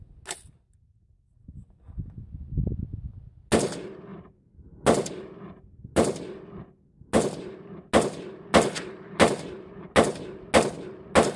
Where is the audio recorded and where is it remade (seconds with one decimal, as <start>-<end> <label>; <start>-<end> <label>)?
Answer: 0.0-11.4 recorded